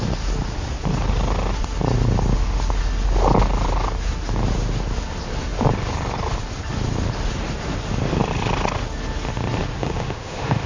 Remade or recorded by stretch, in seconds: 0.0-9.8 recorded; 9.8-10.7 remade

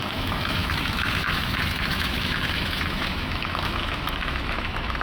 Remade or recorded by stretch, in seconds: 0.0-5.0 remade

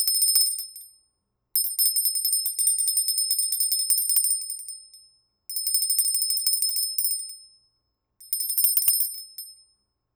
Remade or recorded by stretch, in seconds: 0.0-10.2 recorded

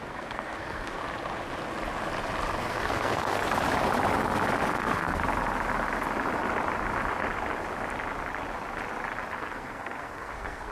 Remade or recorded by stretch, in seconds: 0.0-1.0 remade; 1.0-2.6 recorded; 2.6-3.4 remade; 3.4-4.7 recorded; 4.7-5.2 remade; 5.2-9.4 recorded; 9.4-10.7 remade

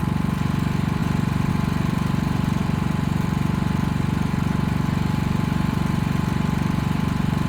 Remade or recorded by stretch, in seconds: 0.0-7.5 remade

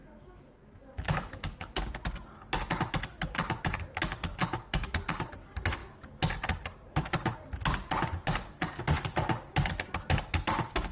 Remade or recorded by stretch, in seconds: 0.0-1.8 remade; 1.8-4.4 recorded; 4.4-4.9 remade; 4.9-10.9 recorded